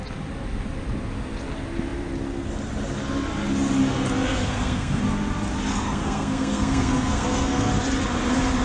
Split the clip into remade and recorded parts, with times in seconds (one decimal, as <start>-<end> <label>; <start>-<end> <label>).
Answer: 0.0-4.3 recorded; 4.3-5.0 remade; 5.0-5.7 recorded; 5.7-7.7 remade; 7.7-8.6 recorded